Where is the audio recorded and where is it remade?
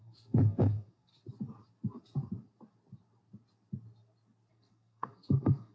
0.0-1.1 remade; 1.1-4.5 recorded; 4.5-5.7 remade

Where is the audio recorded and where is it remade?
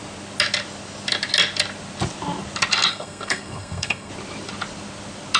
0.0-2.9 recorded; 2.9-4.1 remade; 4.1-5.4 recorded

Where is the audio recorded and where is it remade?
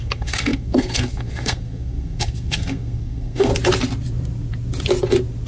0.0-3.5 remade; 3.5-5.5 recorded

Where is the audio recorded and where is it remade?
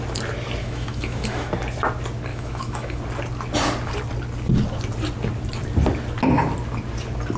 0.0-0.6 recorded; 0.6-1.5 remade; 1.5-2.3 recorded; 2.3-3.0 remade; 3.0-7.4 recorded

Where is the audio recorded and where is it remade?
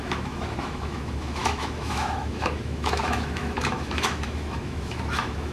0.0-5.5 remade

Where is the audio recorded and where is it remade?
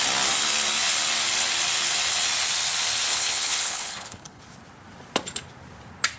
0.0-3.1 recorded; 3.1-4.4 remade; 4.4-6.2 recorded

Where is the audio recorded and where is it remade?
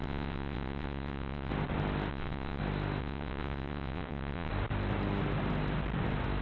0.0-1.5 remade; 1.5-2.1 recorded; 2.1-2.6 remade; 2.6-3.0 recorded; 3.0-4.5 remade; 4.5-6.4 recorded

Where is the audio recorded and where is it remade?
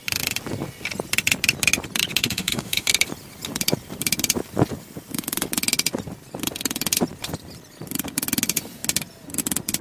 0.0-2.2 recorded; 2.2-2.9 remade; 2.9-9.8 recorded